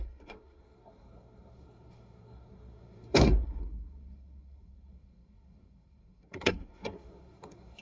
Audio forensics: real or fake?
fake